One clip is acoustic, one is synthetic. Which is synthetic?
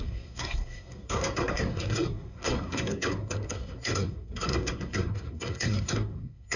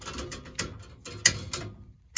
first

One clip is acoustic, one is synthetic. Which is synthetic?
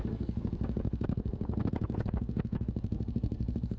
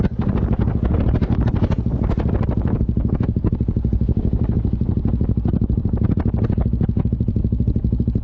first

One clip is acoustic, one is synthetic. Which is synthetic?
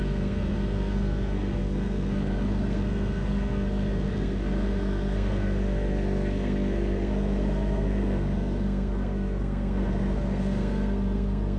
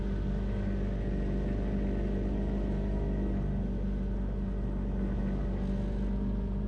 first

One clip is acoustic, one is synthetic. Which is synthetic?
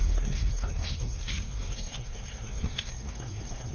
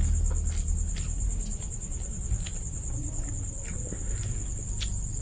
first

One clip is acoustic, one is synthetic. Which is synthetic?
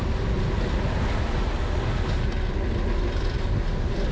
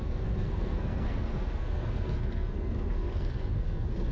second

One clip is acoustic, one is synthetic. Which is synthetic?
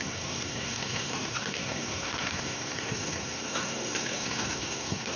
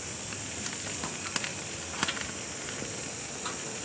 first